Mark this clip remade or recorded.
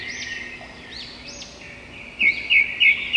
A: recorded